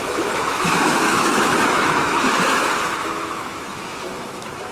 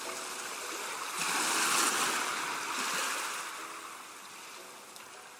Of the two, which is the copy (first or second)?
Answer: first